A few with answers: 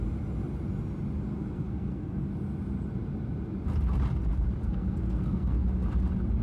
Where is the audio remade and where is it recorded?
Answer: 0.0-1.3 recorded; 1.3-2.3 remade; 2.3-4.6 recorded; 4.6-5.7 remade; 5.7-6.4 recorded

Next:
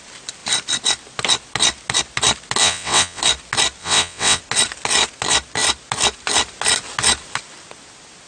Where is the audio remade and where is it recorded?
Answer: 0.0-2.6 recorded; 2.6-3.2 remade; 3.2-3.8 recorded; 3.8-4.4 remade; 4.4-8.3 recorded

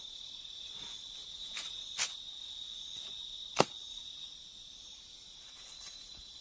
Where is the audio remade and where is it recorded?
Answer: 0.0-1.2 recorded; 1.2-4.7 remade; 4.7-6.4 recorded

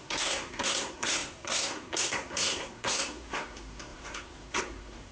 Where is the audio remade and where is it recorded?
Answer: 0.0-5.1 remade